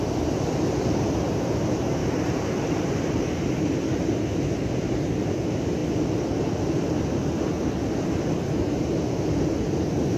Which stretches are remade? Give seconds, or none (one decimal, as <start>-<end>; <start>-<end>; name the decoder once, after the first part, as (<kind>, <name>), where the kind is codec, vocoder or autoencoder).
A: 2.0-3.4 (vocoder, BigVGAN v2)